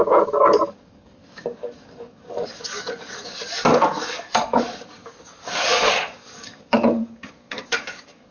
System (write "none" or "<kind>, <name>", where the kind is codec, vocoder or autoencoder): codec, DAC